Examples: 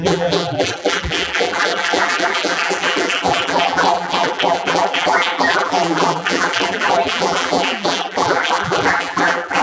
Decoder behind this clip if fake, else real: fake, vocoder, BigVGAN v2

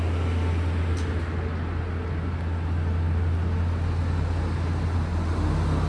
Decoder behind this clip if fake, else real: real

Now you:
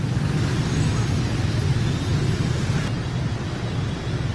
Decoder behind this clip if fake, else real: real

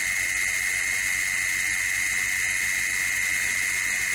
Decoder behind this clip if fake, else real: real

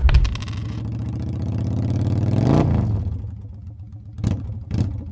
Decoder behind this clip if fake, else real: real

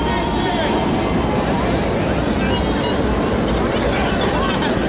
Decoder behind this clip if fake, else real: real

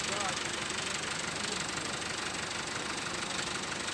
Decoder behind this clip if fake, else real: real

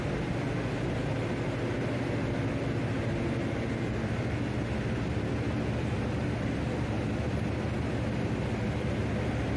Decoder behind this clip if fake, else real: real